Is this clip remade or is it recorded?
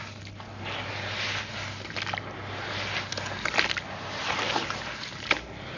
recorded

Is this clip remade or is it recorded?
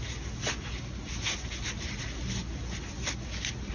recorded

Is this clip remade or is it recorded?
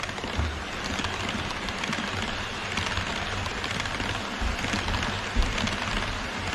recorded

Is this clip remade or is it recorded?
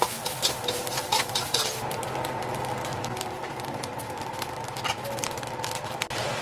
remade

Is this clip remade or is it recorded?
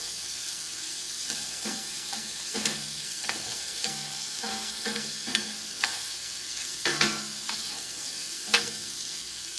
remade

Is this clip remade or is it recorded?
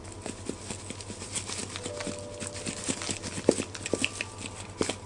recorded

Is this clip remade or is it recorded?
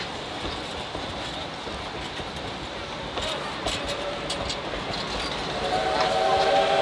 recorded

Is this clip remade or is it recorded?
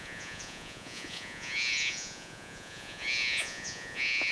remade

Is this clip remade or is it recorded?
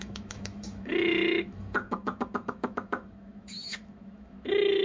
remade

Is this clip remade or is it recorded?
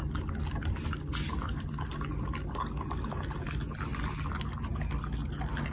recorded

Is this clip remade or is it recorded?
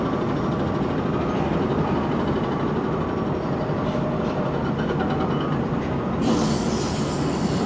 recorded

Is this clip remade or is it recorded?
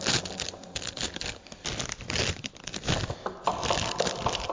recorded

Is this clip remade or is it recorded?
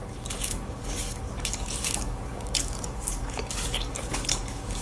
remade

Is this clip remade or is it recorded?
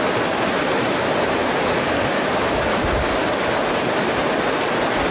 recorded